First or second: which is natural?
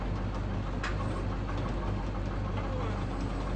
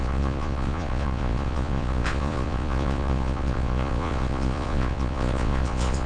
first